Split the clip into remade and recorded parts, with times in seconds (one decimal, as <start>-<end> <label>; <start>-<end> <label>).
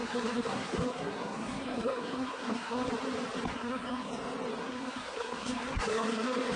0.0-2.9 remade; 2.9-3.5 recorded; 3.5-4.1 remade; 4.1-4.6 recorded; 4.6-6.6 remade